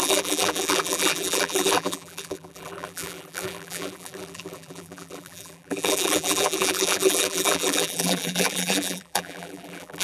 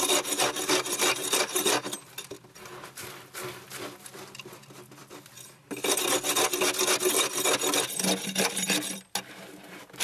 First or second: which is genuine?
second